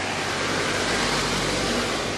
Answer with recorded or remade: recorded